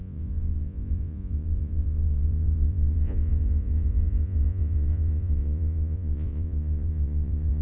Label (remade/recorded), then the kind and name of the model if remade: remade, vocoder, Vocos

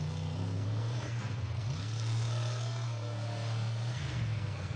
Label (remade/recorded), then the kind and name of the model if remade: remade, codec, SNAC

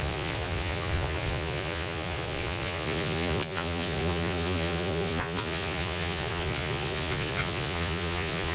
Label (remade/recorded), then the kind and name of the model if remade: remade, vocoder, Vocos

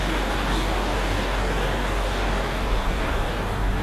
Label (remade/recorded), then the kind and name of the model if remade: remade, codec, DAC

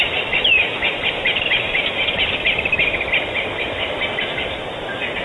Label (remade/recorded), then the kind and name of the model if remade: recorded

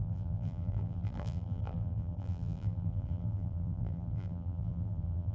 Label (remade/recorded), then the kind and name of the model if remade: remade, vocoder, BigVGAN v2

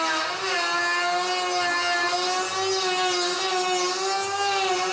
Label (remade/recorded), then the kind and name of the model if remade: recorded